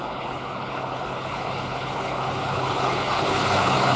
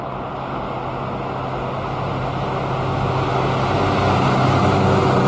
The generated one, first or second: first